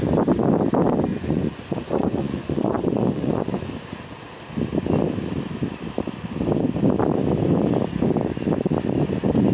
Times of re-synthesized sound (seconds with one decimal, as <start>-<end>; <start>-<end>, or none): 1.1-3.7